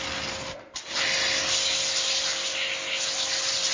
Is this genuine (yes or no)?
yes